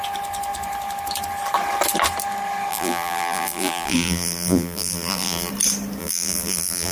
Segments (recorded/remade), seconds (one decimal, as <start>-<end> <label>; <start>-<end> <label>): 0.0-2.7 recorded; 2.7-5.5 remade; 5.5-6.0 recorded; 6.0-6.9 remade